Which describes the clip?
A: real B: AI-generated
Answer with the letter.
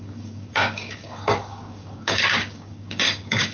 B